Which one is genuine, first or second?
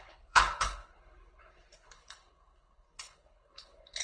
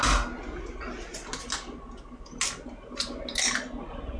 second